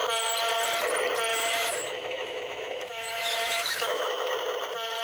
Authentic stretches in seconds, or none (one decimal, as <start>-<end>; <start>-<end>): 0.0-1.3; 4.3-5.0

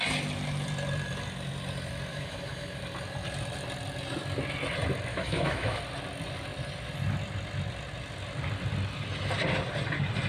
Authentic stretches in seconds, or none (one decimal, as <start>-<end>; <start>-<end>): 0.0-2.1; 2.8-5.1; 5.8-10.3

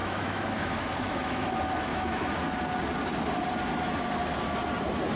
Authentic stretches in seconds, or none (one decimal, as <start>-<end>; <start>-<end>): 1.5-1.9; 2.4-5.2

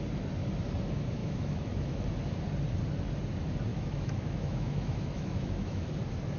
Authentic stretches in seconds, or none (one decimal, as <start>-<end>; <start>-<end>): 0.0-1.2; 2.1-3.7; 5.9-6.4